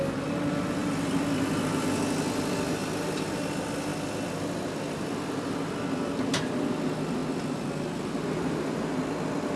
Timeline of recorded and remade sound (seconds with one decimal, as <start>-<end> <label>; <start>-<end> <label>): 0.0-9.6 recorded